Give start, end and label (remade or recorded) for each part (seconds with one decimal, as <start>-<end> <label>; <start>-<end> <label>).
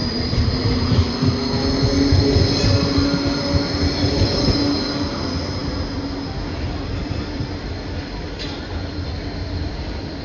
0.0-10.2 recorded